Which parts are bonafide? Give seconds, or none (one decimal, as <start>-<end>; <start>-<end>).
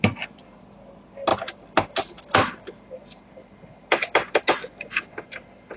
0.0-5.8